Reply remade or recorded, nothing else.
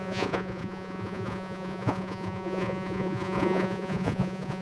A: remade